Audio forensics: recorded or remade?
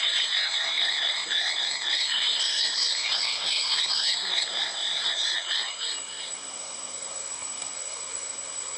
remade